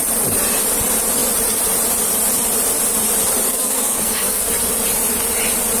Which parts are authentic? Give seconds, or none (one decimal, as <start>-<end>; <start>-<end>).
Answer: 0.0-3.5; 4.5-5.8